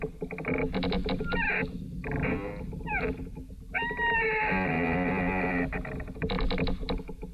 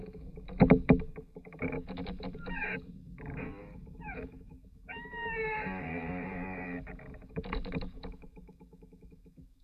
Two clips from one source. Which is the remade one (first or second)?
second